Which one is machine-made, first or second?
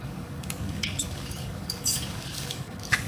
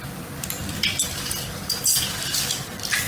first